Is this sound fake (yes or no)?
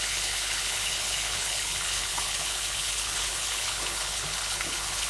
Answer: yes